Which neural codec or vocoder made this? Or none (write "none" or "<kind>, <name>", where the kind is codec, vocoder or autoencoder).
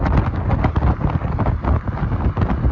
none